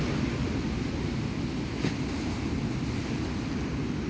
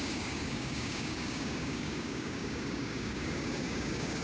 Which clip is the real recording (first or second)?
first